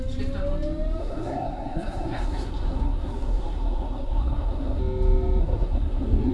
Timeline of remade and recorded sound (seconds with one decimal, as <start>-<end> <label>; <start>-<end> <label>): 0.0-1.0 recorded; 1.0-4.8 remade; 4.8-5.4 recorded; 5.4-6.3 remade